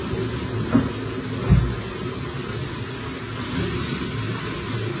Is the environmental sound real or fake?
real